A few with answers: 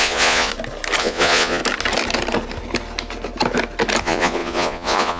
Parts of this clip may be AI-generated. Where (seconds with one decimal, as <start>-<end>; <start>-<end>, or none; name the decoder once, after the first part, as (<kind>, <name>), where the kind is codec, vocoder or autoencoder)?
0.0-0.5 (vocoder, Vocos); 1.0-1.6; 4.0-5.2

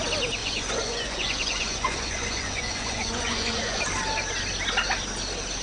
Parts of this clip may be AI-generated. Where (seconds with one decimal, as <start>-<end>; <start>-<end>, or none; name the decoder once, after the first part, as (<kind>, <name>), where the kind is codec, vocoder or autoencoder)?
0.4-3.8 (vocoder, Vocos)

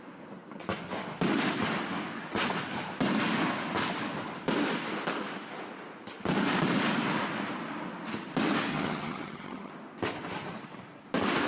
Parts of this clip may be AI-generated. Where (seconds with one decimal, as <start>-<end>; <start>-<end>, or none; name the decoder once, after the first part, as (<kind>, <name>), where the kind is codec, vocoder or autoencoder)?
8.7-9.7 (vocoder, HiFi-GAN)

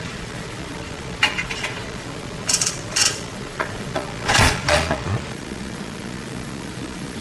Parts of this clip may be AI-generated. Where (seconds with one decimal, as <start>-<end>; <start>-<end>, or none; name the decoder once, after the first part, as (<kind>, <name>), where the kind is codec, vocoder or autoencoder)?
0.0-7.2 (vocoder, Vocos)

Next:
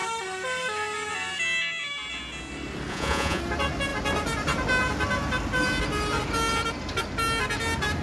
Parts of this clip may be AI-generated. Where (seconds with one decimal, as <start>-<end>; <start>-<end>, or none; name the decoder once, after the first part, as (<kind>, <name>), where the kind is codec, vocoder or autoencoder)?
2.9-3.4 (vocoder, Vocos)

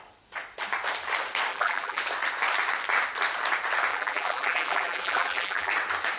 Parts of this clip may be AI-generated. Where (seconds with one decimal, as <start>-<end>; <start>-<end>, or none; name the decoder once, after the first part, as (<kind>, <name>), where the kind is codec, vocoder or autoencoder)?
1.5-2.0 (vocoder, BigVGAN v2); 3.9-5.7